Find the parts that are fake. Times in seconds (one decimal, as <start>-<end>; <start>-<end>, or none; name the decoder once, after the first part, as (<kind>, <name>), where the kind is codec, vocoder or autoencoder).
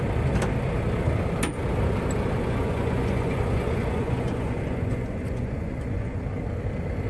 2.4-6.2 (vocoder, Vocos)